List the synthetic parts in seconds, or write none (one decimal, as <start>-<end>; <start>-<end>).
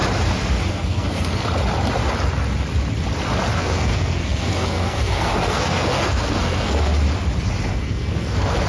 0.7-1.4; 3.5-6.9; 7.7-8.7